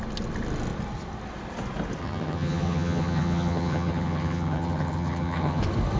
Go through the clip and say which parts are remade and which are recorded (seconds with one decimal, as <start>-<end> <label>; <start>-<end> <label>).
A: 0.0-2.0 recorded; 2.0-5.6 remade; 5.6-6.0 recorded